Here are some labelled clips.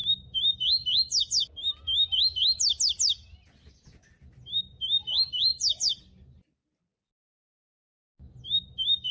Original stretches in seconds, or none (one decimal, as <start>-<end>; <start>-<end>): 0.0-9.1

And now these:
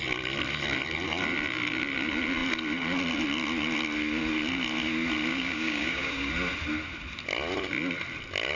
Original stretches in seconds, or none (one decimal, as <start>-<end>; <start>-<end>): 0.0-5.3; 6.3-8.6

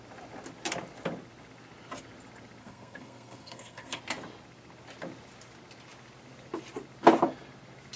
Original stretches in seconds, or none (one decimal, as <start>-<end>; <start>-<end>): 0.0-2.6; 4.0-8.0

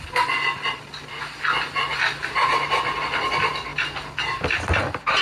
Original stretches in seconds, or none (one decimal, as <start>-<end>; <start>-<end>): 0.0-5.2